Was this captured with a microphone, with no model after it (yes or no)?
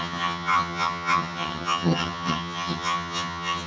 no